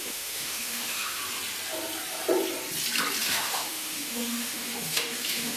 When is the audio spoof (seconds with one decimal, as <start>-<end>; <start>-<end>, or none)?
0.0-1.2; 3.2-5.6